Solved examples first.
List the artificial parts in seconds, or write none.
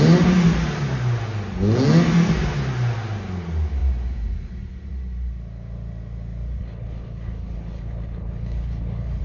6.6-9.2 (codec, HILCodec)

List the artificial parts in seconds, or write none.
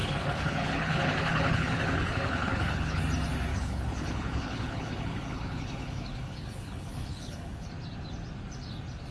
0.0-3.0 (codec, HILCodec); 3.5-7.7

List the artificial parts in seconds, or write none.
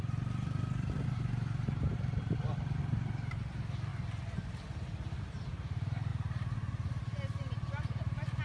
none